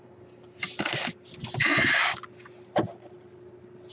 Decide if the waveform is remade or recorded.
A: recorded